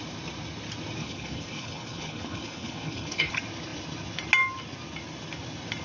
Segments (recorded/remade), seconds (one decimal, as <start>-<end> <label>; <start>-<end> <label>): 0.0-1.0 recorded; 1.0-3.3 remade; 3.3-5.8 recorded

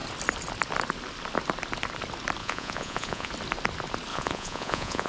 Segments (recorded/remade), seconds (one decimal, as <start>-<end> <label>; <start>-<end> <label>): 0.0-2.4 recorded; 2.4-3.3 remade; 3.3-4.1 recorded; 4.1-5.1 remade

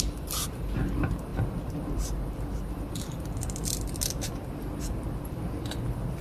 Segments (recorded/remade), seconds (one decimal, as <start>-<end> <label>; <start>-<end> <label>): 0.0-6.2 recorded